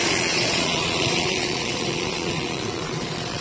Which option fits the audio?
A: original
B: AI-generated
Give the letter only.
B